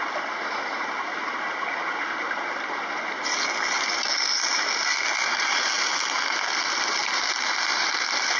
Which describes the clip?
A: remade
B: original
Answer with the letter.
B